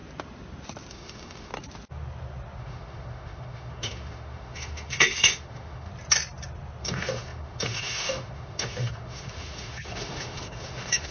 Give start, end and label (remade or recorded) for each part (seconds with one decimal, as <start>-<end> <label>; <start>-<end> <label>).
0.0-0.9 recorded; 0.9-1.5 remade; 1.5-2.6 recorded; 2.6-5.9 remade; 5.9-6.8 recorded; 6.8-11.1 remade